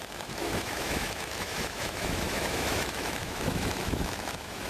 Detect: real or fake fake